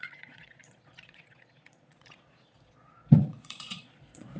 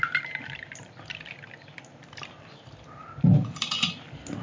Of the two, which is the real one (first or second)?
second